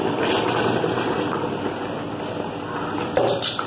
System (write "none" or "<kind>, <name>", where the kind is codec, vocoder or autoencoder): none